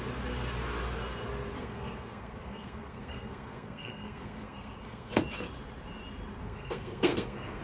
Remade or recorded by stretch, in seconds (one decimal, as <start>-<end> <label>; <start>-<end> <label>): 0.0-1.6 recorded; 1.6-5.1 remade; 5.1-6.4 recorded; 6.4-7.6 remade